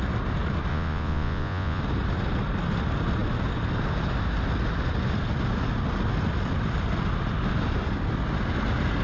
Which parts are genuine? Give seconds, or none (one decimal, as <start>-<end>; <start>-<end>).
0.0-0.7; 1.8-9.0